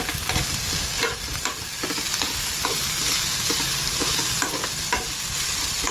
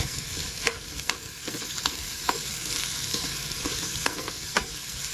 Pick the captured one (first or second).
first